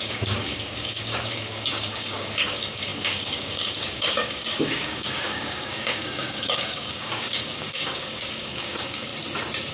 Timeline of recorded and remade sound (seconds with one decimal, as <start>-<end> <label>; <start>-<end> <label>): 0.0-9.1 remade; 9.1-9.7 recorded